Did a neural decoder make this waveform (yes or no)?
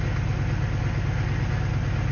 no